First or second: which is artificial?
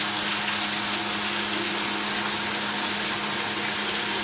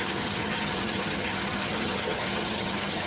second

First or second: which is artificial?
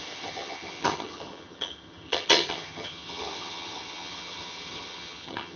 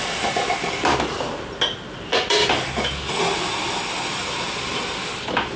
first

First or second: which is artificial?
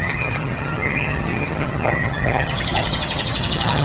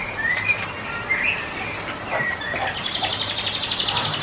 first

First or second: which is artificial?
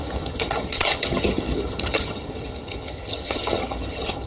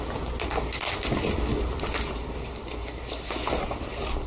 first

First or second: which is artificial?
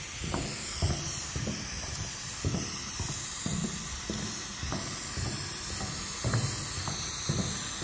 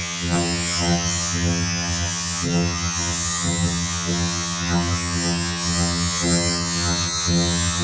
second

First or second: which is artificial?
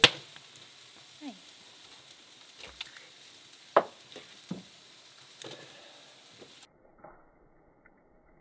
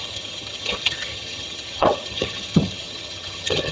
second